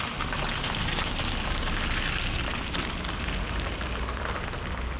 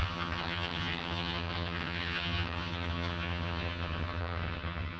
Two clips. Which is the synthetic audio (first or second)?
second